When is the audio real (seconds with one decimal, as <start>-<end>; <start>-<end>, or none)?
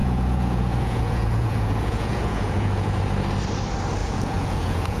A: 3.0-4.0